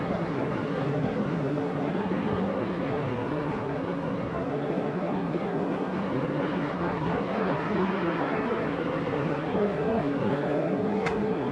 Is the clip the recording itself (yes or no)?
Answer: no